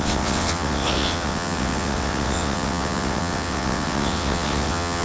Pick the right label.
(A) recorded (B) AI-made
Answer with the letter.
B